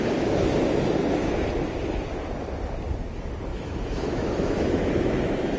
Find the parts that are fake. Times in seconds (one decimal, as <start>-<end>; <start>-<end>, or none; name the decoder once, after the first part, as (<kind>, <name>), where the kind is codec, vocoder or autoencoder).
3.5-5.6 (autoencoder, DAC-VAE)